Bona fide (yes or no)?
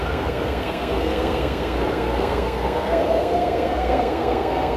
no